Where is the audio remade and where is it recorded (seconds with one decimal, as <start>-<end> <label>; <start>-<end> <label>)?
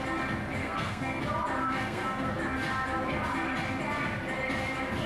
0.0-0.6 recorded; 0.6-1.2 remade; 1.2-1.6 recorded; 1.6-2.3 remade; 2.3-5.1 recorded